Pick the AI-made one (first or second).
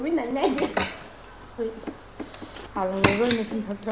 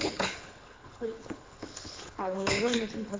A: second